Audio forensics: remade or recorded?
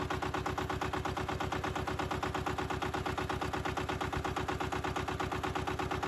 recorded